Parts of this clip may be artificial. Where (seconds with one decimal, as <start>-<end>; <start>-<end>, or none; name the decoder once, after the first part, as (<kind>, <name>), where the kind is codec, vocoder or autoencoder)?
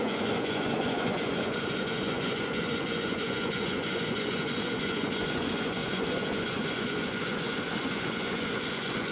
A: 0.0-9.1 (vocoder, Vocos)